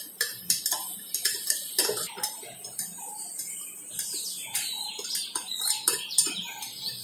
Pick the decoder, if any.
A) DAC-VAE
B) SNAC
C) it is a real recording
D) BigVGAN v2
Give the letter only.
D